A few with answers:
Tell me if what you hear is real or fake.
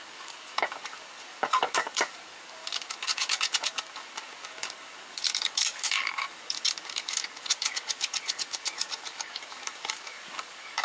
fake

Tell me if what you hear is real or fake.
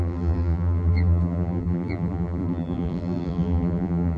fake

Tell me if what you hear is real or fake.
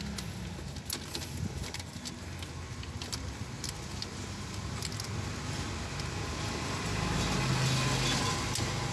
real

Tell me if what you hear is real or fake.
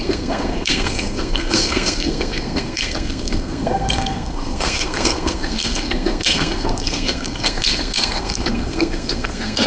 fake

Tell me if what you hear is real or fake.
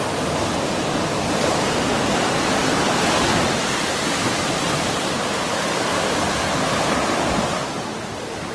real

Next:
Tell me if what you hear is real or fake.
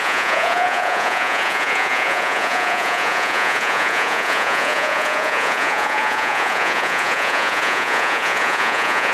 fake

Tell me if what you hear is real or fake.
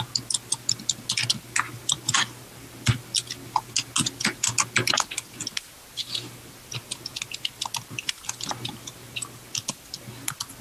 real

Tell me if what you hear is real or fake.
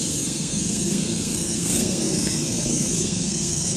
fake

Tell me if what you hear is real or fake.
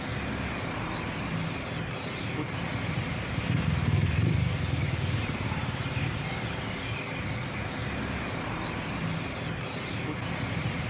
real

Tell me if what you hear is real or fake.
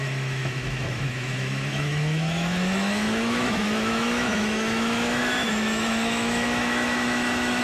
fake